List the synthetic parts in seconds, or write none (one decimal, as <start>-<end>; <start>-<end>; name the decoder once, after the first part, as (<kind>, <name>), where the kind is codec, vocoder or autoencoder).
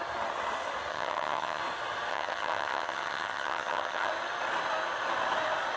0.9-1.6 (vocoder, HiFi-GAN); 2.1-4.1